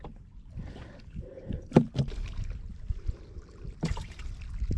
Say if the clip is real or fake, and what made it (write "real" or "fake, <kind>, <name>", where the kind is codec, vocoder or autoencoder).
fake, vocoder, BigVGAN v2